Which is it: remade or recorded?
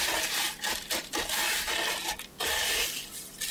recorded